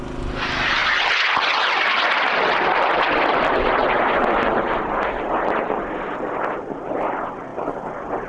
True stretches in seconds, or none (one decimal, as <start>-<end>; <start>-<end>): 3.8-5.4; 7.5-8.3